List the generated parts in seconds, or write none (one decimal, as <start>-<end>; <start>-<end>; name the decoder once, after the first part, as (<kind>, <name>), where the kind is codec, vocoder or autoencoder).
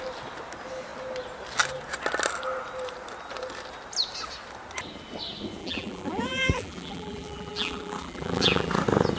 5.6-8.7 (vocoder, BigVGAN v2)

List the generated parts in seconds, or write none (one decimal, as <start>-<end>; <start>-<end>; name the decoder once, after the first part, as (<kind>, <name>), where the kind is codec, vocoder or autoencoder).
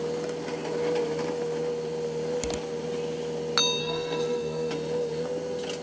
3.8-4.7 (codec, SNAC)